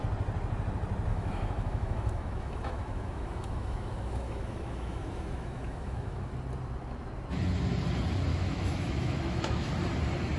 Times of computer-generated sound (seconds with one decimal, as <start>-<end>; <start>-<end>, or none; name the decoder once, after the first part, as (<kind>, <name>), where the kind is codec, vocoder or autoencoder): 1.1-6.3 (autoencoder, DAC-VAE); 8.3-9.7